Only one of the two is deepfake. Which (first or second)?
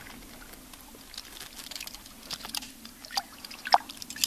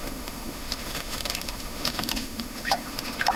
second